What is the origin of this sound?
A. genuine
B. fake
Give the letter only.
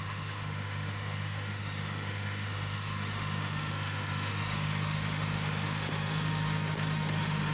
B